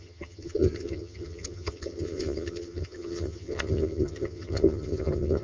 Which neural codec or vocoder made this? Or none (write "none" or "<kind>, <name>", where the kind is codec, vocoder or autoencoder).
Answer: vocoder, HiFi-GAN